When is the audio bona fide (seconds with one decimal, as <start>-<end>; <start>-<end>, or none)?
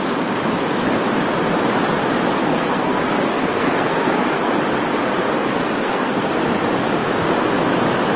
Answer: 0.0-2.4; 4.5-5.2; 6.3-8.2